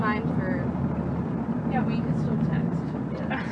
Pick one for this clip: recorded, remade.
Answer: recorded